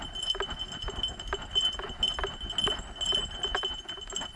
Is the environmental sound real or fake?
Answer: real